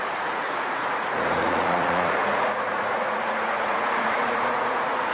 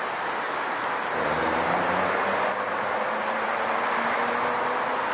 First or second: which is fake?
first